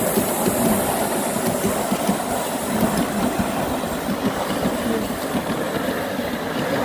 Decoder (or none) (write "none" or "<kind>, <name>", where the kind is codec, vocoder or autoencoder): none